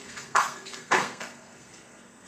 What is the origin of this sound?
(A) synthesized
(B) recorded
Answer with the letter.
A